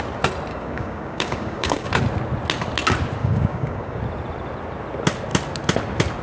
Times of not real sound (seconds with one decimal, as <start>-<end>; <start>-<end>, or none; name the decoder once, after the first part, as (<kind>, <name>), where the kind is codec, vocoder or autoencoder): 0.5-1.9 (codec, DAC); 3.2-4.0

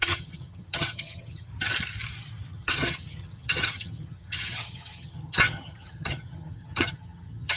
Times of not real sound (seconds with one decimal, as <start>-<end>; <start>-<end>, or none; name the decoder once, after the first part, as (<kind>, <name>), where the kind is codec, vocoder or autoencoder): 0.0-1.5 (vocoder, HiFi-GAN); 2.5-7.6

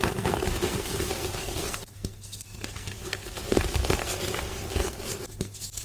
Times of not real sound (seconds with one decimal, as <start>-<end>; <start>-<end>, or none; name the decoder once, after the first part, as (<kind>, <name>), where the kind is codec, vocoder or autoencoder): 0.0-5.8 (codec, SNAC)

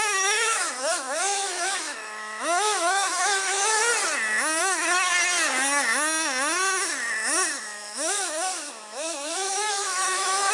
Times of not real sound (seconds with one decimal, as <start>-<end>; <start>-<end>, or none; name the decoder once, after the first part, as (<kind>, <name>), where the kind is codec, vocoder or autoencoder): 0.0-3.8 (autoencoder, DAC-VAE); 4.6-5.1; 7.6-10.5

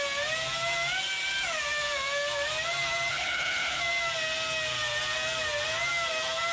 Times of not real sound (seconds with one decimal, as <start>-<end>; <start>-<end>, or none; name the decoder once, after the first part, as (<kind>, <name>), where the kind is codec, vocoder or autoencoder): 3.1-3.8 (codec, HILCodec)